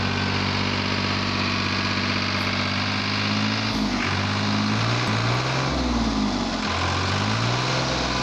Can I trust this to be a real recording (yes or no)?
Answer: yes